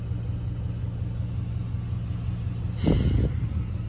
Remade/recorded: recorded